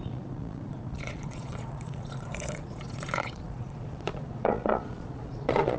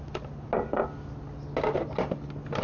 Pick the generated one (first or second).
first